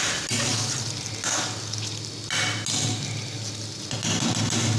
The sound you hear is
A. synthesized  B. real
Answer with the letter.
B